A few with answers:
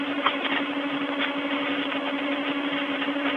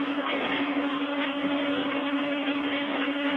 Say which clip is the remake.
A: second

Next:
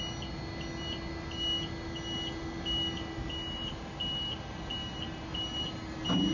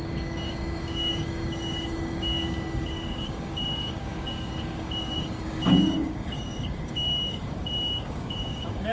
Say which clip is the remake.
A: second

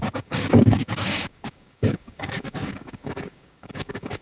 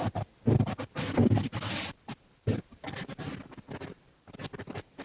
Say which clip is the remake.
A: first